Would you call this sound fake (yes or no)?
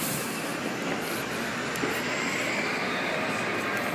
no